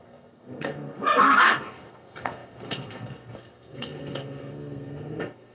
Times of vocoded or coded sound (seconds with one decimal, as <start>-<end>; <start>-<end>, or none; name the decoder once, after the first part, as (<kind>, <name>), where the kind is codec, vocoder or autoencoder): 0.0-5.5 (codec, SNAC)

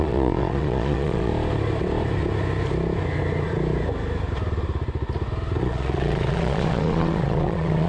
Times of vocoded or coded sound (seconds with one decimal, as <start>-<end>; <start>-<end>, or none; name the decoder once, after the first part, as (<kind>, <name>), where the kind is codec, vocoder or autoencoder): 0.0-1.3 (vocoder, Vocos); 5.6-7.9

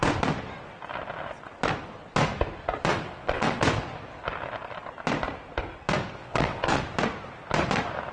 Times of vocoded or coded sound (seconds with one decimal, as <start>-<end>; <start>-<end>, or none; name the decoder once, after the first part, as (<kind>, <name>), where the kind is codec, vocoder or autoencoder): 2.9-3.6 (vocoder, WaveNeXt); 6.2-6.8

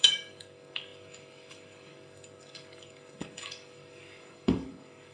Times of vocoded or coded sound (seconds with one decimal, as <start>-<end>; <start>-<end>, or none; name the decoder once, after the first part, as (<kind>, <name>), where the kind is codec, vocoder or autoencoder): 0.0-5.1 (codec, DAC)